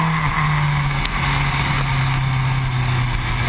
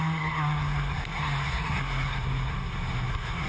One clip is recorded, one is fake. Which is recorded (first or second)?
first